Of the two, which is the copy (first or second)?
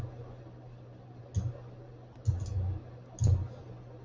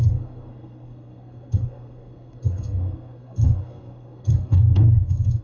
second